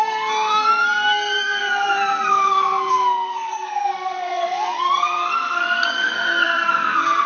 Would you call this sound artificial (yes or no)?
yes